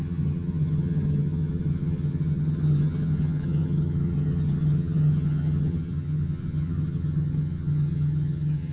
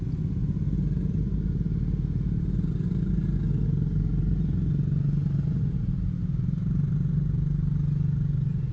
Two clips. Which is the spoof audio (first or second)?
first